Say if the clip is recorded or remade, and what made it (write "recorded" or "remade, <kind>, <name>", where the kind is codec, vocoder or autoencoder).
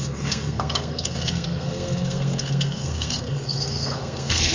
remade, codec, SNAC